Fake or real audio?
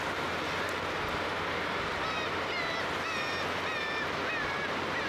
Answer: real